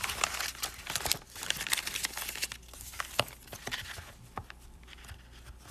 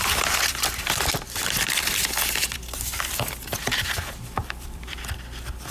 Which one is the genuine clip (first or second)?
first